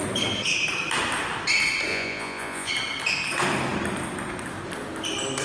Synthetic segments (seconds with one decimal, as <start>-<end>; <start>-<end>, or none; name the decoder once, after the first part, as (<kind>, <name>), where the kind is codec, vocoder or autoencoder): 1.9-2.7 (vocoder, Vocos)